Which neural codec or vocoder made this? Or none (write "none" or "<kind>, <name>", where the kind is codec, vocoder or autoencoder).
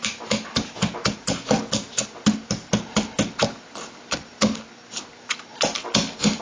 none